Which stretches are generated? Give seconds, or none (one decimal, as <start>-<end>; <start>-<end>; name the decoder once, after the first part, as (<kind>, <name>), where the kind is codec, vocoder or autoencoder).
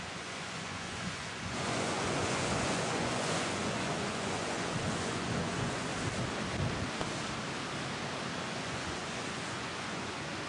0.0-5.9 (vocoder, Vocos); 8.4-10.5